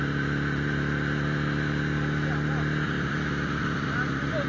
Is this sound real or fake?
real